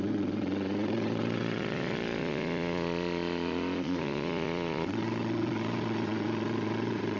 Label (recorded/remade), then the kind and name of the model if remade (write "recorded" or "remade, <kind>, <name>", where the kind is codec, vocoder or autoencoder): remade, vocoder, Vocos